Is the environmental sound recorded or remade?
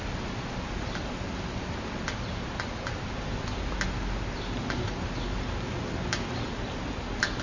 recorded